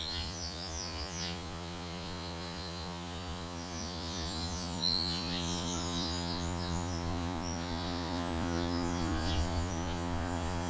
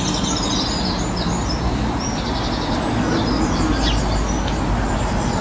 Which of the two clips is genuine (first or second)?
second